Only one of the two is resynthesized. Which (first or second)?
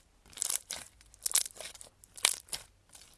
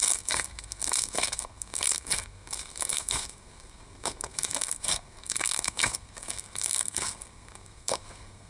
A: second